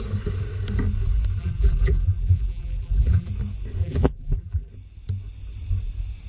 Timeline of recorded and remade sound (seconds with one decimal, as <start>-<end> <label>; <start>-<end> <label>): 0.0-1.4 recorded; 1.4-3.3 remade; 3.3-3.8 recorded; 3.8-4.7 remade; 4.7-6.3 recorded